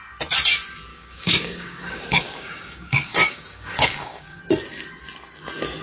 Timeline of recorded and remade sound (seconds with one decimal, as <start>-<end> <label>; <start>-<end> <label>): 0.0-0.9 recorded; 0.9-4.4 remade; 4.4-5.8 recorded